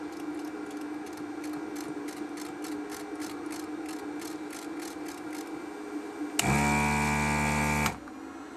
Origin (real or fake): real